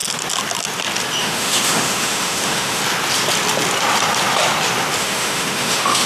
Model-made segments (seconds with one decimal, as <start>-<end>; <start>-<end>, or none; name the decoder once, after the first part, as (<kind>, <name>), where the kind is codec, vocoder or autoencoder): 1.2-2.8 (autoencoder, DAC-VAE); 5.0-6.1